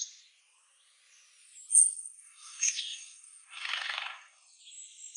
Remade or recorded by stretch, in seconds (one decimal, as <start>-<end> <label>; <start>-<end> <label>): 0.0-1.7 recorded; 1.7-4.6 remade; 4.6-5.2 recorded